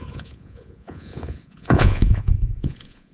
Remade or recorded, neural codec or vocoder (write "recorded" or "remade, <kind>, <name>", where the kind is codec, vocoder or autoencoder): remade, vocoder, Vocos